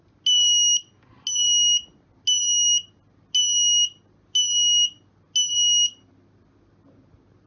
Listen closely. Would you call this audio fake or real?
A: real